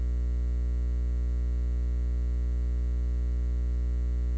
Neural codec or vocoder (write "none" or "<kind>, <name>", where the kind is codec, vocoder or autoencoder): none